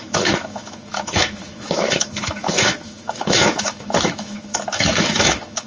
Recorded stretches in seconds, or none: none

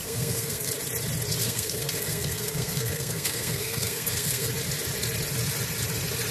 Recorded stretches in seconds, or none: 0.7-1.4; 4.5-6.3

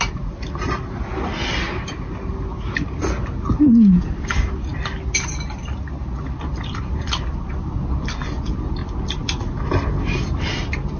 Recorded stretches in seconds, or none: 0.0-11.0

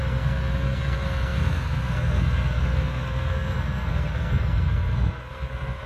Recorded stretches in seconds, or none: none

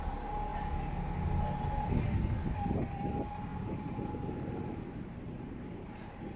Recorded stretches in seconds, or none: 0.0-3.5; 5.8-6.4